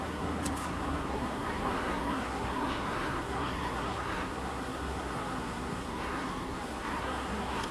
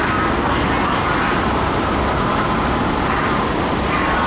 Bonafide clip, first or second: second